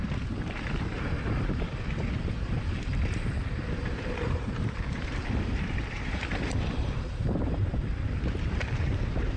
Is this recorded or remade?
remade